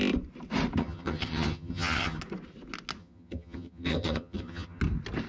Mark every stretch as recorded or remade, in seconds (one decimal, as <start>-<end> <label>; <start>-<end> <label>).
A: 0.0-0.8 recorded; 0.8-2.2 remade; 2.2-3.0 recorded; 3.0-4.8 remade; 4.8-5.3 recorded